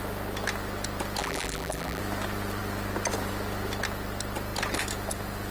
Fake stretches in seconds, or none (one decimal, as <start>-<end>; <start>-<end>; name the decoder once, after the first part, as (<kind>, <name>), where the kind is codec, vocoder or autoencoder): 1.2-2.0 (vocoder, BigVGAN v2)